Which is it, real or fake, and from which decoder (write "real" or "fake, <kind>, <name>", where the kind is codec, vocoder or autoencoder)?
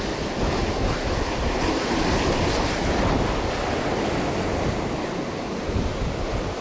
real